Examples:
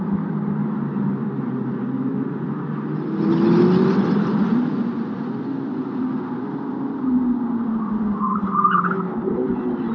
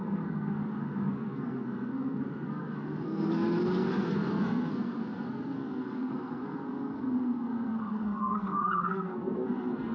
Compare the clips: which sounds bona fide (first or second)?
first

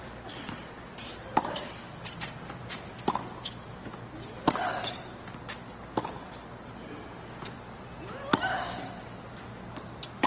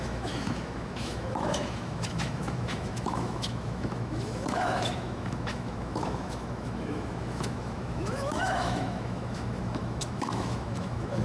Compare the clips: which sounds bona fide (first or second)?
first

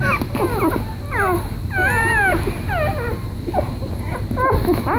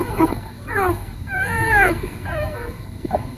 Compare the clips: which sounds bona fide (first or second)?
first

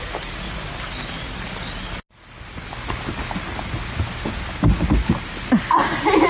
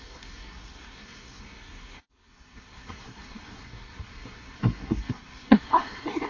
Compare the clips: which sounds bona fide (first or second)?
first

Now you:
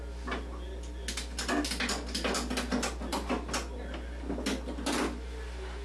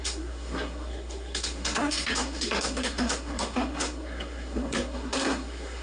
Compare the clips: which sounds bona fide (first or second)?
first